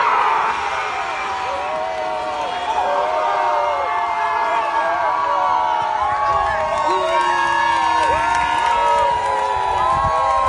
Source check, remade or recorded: recorded